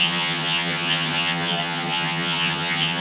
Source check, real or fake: fake